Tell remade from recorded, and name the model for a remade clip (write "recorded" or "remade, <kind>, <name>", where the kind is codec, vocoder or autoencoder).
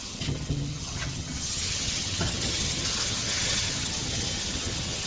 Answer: remade, vocoder, HiFi-GAN